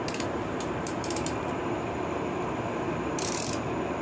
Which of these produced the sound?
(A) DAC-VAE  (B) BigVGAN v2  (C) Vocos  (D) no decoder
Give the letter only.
B